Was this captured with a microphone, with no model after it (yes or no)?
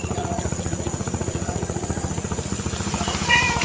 no